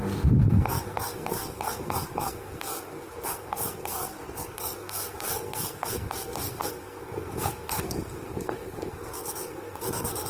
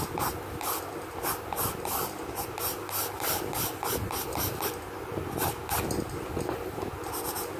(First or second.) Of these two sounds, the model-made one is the first